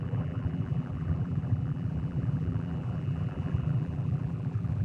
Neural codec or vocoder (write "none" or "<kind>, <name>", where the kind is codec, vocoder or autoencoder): vocoder, BigVGAN v2